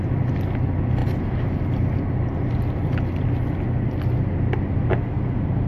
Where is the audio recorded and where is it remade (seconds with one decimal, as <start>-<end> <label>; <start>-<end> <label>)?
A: 0.0-5.7 recorded